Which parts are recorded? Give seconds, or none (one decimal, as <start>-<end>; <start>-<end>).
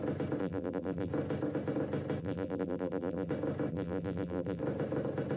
0.0-0.4; 1.1-2.2; 3.3-3.7; 4.6-5.4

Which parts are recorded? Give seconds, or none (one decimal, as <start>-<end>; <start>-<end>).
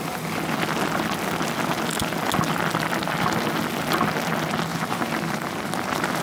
0.0-4.7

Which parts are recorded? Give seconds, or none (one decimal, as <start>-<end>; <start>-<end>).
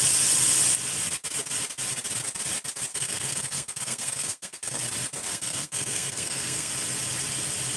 0.0-2.9; 4.8-5.3; 6.7-7.8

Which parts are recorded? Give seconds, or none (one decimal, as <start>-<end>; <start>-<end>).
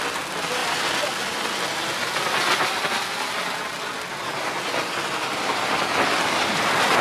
0.0-7.0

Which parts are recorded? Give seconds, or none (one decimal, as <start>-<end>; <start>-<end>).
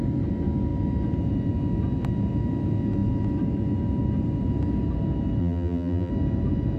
0.0-5.4; 6.1-6.8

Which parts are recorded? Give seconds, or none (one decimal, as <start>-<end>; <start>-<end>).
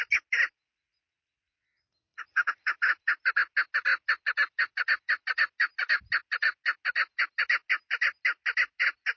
0.0-2.1; 2.8-9.2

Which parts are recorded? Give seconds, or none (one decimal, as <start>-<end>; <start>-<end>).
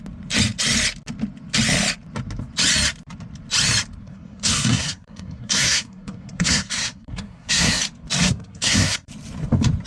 0.0-4.0; 7.8-8.2; 9.1-9.9